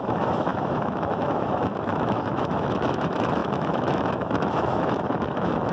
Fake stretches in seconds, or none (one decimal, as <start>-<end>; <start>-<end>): 0.0-5.7